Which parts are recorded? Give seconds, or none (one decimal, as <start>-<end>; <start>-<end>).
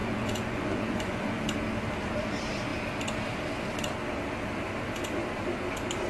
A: 1.4-6.1